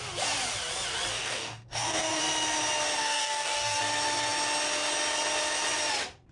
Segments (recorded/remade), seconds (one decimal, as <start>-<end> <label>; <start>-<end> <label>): 0.0-1.1 recorded; 1.1-2.2 remade; 2.2-3.0 recorded; 3.0-3.8 remade; 3.8-6.3 recorded